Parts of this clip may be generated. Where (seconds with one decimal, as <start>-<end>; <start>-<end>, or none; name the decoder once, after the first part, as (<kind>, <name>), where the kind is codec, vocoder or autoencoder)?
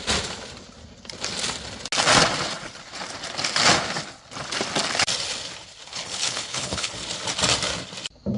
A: 5.9-6.9 (codec, HILCodec)